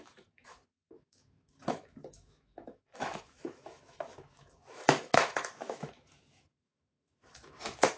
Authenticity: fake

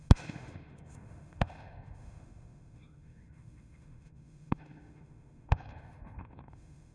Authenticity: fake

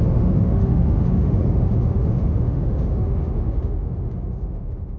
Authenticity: fake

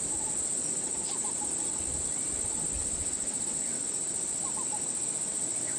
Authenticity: real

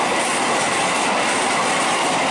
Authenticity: real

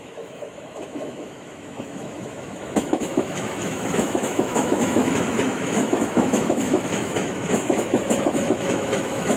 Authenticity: fake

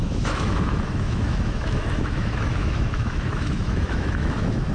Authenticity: fake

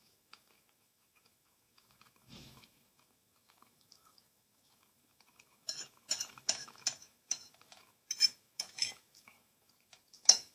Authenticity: fake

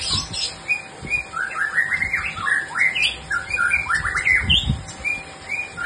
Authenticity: real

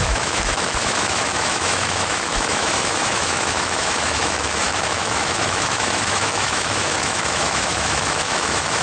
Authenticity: fake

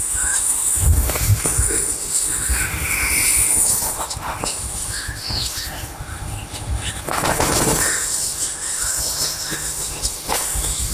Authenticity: fake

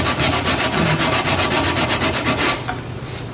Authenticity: real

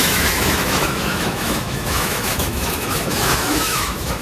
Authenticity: fake